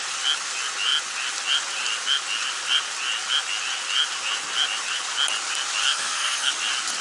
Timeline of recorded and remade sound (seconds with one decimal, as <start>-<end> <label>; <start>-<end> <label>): 0.0-5.8 recorded; 5.8-6.5 remade; 6.5-7.0 recorded